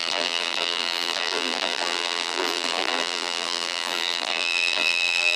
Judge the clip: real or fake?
fake